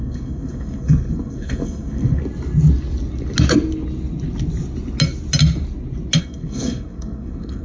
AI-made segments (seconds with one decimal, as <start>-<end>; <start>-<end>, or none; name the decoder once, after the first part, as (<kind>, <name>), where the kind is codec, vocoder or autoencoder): 0.0-2.2 (codec, SNAC); 6.2-7.6